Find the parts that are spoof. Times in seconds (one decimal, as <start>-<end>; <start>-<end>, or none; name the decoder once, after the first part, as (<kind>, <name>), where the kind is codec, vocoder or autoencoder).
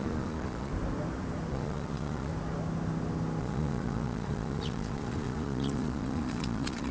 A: 0.0-0.7 (vocoder, Vocos); 1.5-2.3; 3.4-6.9